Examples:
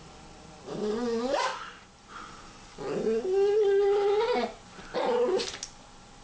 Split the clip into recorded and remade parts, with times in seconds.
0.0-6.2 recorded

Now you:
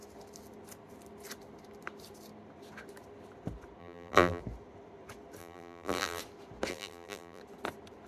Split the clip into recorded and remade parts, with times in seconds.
0.0-3.8 recorded; 3.8-4.4 remade; 4.4-5.4 recorded; 5.4-6.2 remade; 6.2-6.7 recorded; 6.7-7.4 remade; 7.4-8.1 recorded

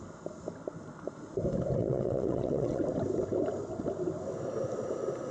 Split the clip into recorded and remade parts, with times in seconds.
0.0-1.8 recorded; 1.8-2.8 remade; 2.8-5.3 recorded

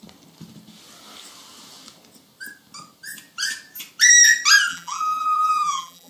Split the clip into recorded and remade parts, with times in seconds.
0.0-4.7 recorded; 4.7-6.1 remade

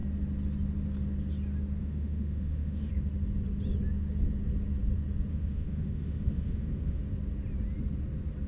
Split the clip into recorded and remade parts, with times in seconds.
0.0-1.8 recorded; 1.8-2.9 remade; 2.9-5.3 recorded; 5.3-7.0 remade; 7.0-8.5 recorded

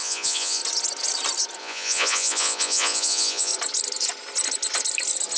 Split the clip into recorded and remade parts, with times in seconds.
0.0-0.6 remade; 0.6-1.6 recorded; 1.6-3.5 remade; 3.5-5.4 recorded

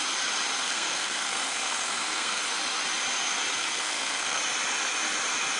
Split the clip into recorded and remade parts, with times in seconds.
0.0-0.6 recorded; 0.6-2.4 remade; 2.4-3.6 recorded; 3.6-4.4 remade; 4.4-5.6 recorded